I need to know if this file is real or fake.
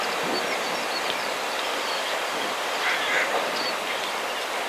real